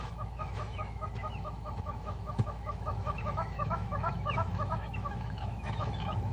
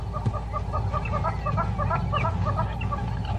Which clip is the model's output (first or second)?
first